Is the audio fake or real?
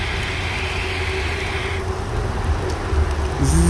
real